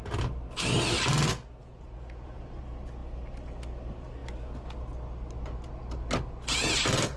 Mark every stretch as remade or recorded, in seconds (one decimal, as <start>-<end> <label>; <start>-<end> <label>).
0.0-1.6 recorded; 1.6-2.6 remade; 2.6-7.2 recorded